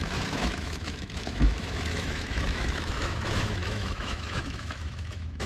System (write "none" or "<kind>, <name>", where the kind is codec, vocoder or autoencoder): autoencoder, DAC-VAE